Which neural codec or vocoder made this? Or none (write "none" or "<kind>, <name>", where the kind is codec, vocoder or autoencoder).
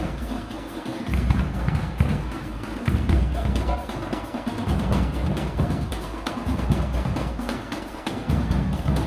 codec, SNAC